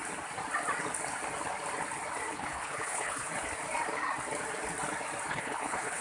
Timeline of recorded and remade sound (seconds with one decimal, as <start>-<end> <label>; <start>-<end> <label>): 0.0-2.3 recorded; 2.3-3.3 remade; 3.3-5.3 recorded; 5.3-6.0 remade

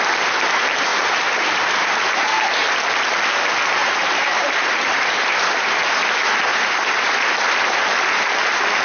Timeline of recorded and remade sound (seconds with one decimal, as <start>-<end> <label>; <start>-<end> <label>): 0.0-0.9 recorded; 0.9-2.3 remade; 2.3-3.8 recorded; 3.8-5.7 remade; 5.7-6.5 recorded; 6.5-7.1 remade; 7.1-8.8 recorded

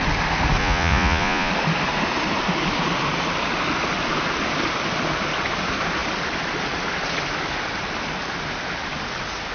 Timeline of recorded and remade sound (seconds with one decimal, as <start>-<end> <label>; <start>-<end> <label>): 0.0-0.6 recorded; 0.6-1.5 remade; 1.5-9.5 recorded

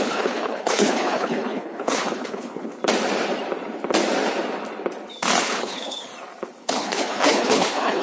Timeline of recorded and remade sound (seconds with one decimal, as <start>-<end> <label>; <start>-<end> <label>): 0.0-2.7 remade; 2.7-5.4 recorded; 5.4-6.1 remade; 6.1-6.6 recorded; 6.6-8.0 remade